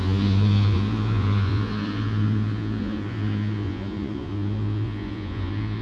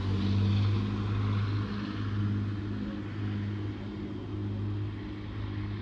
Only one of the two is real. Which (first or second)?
second